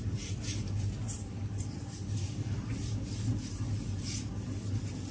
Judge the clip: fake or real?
real